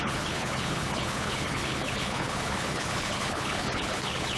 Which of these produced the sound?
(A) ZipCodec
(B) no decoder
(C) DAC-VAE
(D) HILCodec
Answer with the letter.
D